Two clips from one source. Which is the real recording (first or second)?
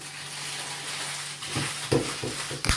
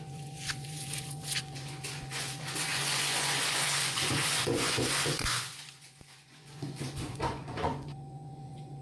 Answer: first